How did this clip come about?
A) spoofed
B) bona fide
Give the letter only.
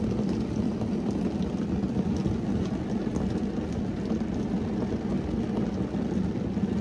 B